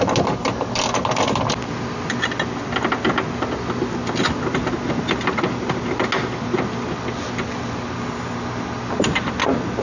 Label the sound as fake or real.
real